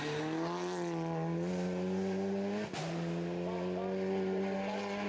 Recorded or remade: recorded